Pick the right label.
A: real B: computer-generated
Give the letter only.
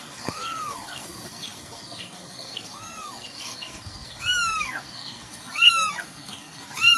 B